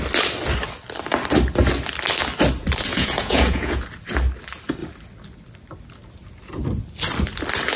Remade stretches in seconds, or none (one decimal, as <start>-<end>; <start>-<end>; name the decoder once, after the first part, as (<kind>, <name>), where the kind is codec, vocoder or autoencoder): 2.9-3.9 (vocoder, Vocos)